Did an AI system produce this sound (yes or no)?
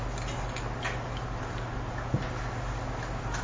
no